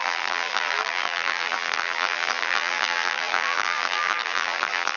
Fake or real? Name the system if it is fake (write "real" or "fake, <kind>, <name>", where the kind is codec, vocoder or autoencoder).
fake, vocoder, BigVGAN v2